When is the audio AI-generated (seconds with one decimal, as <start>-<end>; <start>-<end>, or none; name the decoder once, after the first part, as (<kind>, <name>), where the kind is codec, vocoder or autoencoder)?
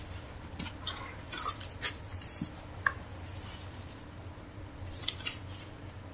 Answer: none